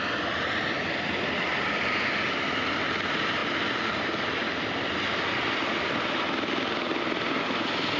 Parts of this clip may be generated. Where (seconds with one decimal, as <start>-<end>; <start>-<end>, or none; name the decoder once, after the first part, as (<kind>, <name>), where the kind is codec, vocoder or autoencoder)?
none